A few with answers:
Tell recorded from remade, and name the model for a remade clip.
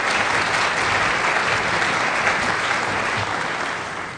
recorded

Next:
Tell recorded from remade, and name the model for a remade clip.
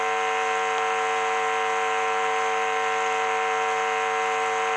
recorded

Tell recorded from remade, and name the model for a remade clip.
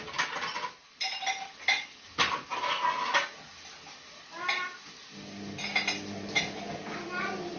recorded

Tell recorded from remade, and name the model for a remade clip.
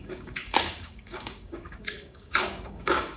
remade, codec, DAC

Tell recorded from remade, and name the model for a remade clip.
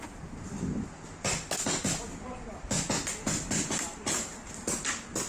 recorded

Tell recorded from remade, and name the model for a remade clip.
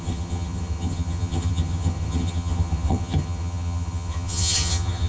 remade, vocoder, HiFi-GAN